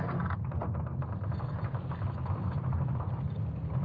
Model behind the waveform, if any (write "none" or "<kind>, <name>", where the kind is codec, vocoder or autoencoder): none